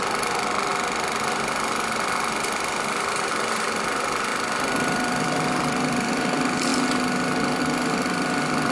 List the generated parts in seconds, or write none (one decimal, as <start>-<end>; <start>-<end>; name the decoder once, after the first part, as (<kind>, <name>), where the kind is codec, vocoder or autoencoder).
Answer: 0.0-0.7 (vocoder, BigVGAN v2); 3.1-6.7; 7.6-8.7